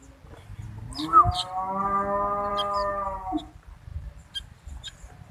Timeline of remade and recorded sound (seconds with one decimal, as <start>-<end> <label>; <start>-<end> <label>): 0.0-5.3 recorded